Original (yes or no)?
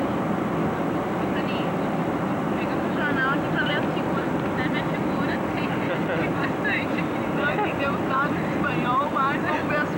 yes